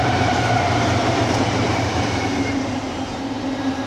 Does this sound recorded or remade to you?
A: remade